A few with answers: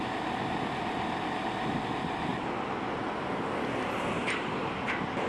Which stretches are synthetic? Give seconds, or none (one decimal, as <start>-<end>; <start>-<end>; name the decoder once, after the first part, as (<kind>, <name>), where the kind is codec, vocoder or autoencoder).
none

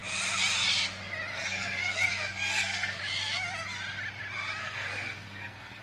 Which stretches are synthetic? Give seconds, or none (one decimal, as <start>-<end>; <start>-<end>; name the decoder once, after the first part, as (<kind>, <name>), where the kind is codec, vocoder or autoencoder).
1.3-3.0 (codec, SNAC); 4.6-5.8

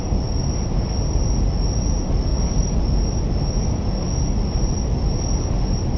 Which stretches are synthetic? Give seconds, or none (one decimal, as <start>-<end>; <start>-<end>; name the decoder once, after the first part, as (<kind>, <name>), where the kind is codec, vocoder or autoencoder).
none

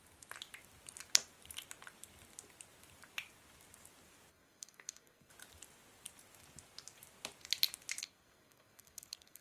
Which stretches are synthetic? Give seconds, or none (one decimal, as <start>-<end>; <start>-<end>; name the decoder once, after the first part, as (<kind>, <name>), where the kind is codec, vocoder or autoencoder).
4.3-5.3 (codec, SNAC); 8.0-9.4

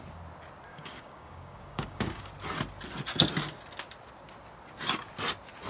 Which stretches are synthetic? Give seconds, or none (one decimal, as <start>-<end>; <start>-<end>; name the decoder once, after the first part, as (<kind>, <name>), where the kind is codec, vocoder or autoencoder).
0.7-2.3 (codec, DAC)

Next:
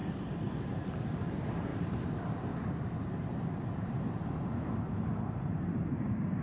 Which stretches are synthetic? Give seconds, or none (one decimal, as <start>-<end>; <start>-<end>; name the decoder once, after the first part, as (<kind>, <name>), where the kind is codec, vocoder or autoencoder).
0.6-6.4 (vocoder, BigVGAN v2)